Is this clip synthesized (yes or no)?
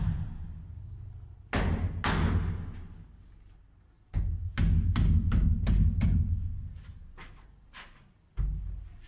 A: no